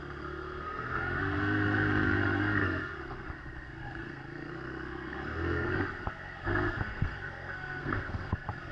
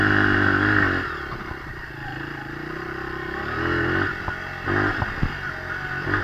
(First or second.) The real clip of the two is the second